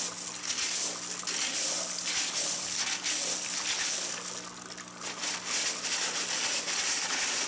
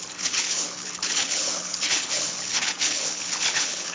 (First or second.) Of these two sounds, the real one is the first